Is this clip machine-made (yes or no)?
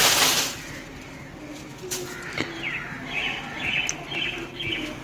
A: no